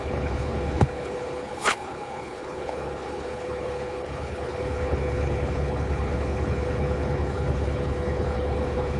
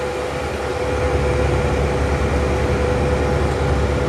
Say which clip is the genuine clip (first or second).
second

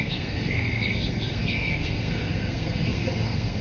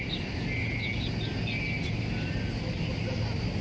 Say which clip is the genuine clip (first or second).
second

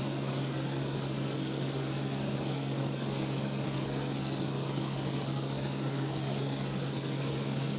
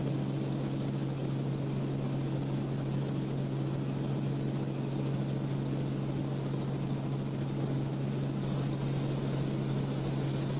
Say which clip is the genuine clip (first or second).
second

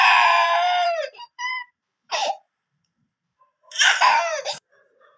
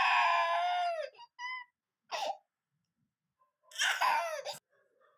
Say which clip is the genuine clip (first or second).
second